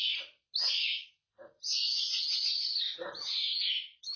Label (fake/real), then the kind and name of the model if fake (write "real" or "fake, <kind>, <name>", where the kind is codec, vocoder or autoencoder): real